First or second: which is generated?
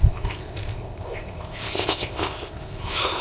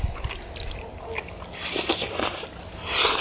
first